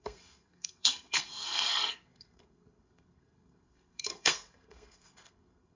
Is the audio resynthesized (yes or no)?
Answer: yes